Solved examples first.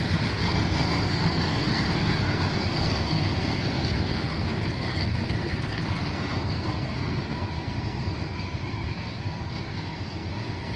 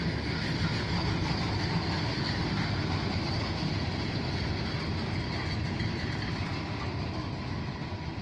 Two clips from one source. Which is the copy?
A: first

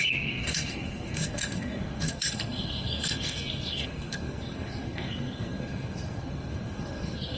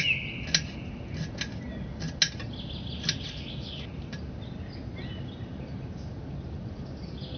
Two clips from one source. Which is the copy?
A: first